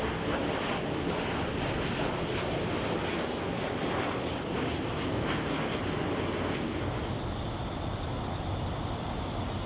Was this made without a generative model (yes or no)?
yes